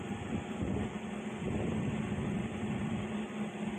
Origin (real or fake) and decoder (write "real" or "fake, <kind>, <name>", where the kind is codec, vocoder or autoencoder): fake, vocoder, BigVGAN v2